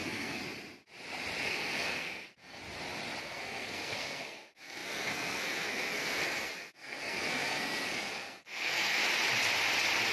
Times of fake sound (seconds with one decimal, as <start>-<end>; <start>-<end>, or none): 0.0-0.4; 1.4-2.6; 3.2-9.0